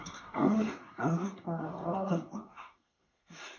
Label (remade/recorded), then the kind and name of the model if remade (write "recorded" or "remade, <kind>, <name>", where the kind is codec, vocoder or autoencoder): remade, codec, SNAC